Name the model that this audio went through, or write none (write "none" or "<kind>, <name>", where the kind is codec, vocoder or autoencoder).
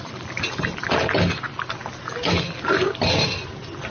none